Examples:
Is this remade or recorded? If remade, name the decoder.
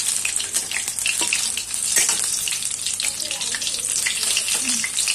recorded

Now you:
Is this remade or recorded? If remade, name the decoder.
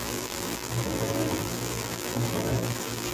remade, vocoder, BigVGAN v2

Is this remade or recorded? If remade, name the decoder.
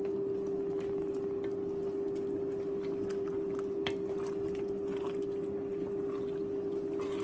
recorded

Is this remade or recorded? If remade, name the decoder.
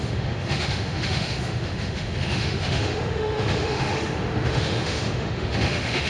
remade, autoencoder, DAC-VAE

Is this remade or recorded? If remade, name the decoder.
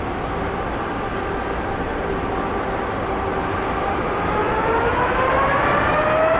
recorded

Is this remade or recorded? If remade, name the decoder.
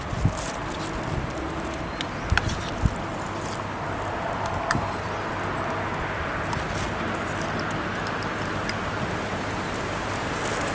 recorded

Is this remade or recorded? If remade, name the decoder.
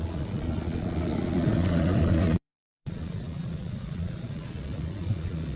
remade, vocoder, Vocos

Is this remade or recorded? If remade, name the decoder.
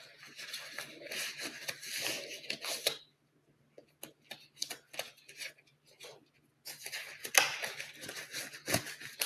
recorded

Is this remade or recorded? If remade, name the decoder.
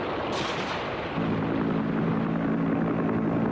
recorded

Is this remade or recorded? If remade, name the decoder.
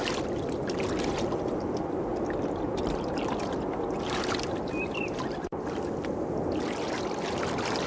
recorded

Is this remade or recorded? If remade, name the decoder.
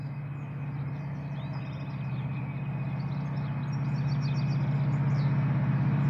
recorded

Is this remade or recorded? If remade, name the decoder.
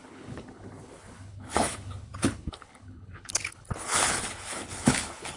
remade, codec, HILCodec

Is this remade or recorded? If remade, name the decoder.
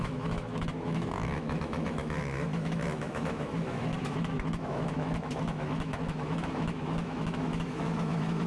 remade, autoencoder, DAC-VAE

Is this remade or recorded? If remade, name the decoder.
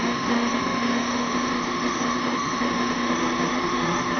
remade, autoencoder, DAC-VAE